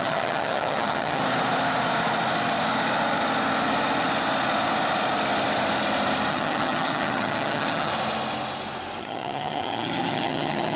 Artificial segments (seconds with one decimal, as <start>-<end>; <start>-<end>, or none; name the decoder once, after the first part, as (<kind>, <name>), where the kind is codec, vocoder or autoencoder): 0.0-1.2 (vocoder, HiFi-GAN); 6.3-7.9; 9.0-10.8